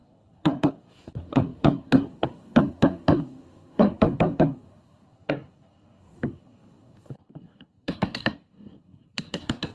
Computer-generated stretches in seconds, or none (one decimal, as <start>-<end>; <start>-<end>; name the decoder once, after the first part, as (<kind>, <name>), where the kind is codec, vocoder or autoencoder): 0.0-9.7 (codec, SNAC)